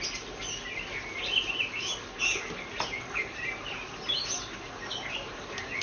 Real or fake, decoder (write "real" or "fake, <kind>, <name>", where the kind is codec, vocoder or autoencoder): real